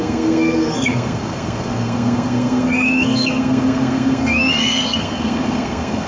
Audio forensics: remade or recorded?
remade